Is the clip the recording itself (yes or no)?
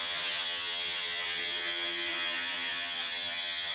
no